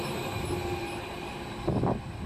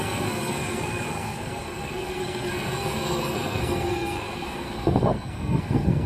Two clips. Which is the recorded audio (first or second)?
first